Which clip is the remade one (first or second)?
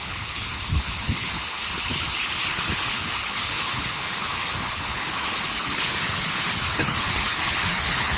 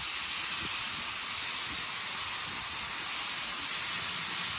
first